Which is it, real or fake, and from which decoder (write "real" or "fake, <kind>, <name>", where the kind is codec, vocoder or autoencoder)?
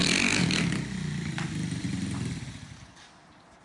real